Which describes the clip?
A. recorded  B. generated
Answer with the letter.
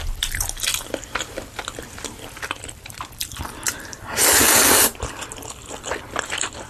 B